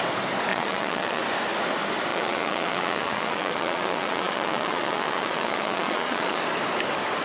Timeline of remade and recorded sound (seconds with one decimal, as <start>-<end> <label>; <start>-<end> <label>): 0.0-0.5 recorded; 0.5-1.2 remade; 1.2-2.1 recorded; 2.1-6.4 remade; 6.4-7.2 recorded